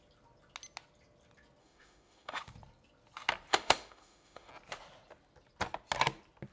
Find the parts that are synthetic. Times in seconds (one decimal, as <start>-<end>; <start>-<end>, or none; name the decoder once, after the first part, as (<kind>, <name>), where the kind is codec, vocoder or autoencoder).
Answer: 1.6-2.4 (autoencoder, DAC-VAE); 3.5-4.5